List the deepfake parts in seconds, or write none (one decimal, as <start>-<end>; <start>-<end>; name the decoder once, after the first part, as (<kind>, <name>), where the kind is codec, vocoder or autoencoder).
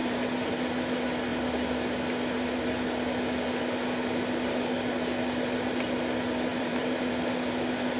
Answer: 0.0-0.5 (vocoder, BigVGAN v2); 6.5-7.1